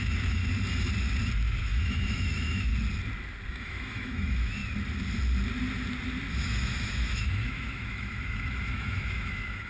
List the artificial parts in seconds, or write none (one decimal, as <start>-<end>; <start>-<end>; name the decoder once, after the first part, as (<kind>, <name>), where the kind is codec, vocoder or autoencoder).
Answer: 0.0-0.4 (autoencoder, DAC-VAE); 1.6-2.7; 3.5-4.6; 6.3-9.7

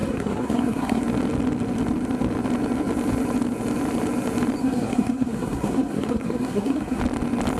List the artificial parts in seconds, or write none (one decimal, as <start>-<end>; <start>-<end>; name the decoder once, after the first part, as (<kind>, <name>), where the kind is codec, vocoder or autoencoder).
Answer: 0.0-1.0 (codec, SNAC); 4.6-7.0